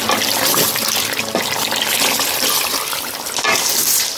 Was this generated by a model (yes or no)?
no